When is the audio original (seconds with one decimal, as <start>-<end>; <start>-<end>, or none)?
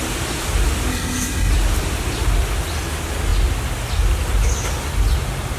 0.0-0.9; 1.5-5.6